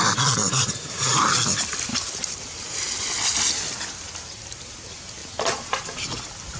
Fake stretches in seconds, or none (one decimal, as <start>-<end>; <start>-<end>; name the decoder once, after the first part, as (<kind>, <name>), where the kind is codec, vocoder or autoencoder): 0.4-1.3 (vocoder, BigVGAN v2); 1.9-2.4; 5.2-6.1